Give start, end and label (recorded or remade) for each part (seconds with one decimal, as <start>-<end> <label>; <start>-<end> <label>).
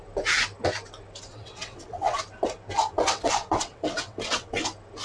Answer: 0.0-1.3 recorded; 1.3-2.2 remade; 2.2-2.9 recorded; 2.9-4.6 remade; 4.6-5.0 recorded